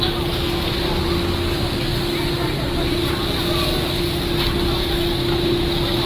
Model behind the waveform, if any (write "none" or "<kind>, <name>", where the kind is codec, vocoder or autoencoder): none